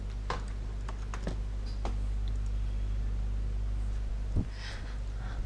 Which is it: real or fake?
real